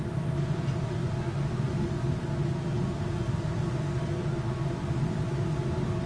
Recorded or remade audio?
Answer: recorded